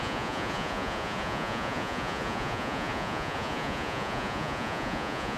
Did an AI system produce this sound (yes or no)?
yes